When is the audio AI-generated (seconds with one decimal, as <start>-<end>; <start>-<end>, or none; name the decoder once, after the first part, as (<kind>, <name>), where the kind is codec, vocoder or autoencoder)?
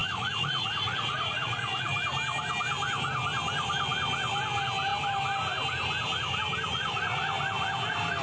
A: 0.0-2.0 (vocoder, Vocos)